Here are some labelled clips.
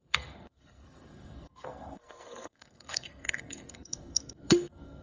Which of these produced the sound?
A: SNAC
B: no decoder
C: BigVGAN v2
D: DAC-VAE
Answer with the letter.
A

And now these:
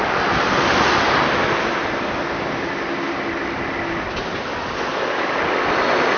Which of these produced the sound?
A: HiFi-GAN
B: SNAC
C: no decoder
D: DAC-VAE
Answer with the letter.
C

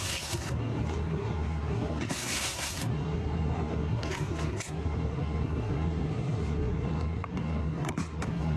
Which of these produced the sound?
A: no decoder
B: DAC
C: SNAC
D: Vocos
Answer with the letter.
C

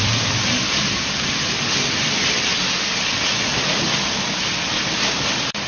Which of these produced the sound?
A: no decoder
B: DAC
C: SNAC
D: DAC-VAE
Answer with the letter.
A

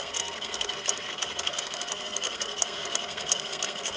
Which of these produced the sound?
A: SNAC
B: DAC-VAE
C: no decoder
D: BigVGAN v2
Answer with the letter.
A